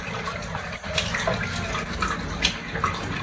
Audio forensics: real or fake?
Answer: real